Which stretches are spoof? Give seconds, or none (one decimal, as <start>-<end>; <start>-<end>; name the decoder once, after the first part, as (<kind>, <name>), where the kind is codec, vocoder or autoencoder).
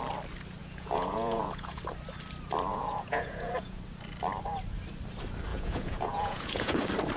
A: 0.6-1.8 (vocoder, Vocos); 2.7-3.8; 5.5-6.8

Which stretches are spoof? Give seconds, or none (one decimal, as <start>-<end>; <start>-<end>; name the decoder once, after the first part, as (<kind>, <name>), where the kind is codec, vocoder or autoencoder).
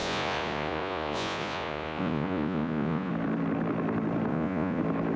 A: 0.0-3.1 (vocoder, Vocos); 4.3-4.8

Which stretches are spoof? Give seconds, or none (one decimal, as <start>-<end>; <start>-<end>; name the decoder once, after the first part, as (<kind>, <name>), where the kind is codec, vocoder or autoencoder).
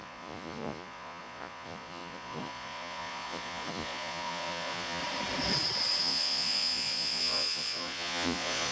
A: 0.0-5.0 (vocoder, Vocos); 6.0-8.7